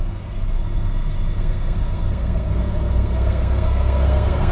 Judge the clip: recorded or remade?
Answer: remade